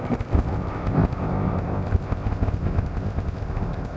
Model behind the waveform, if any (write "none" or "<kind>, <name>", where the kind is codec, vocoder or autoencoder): codec, ZipCodec